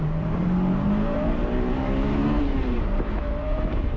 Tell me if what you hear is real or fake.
fake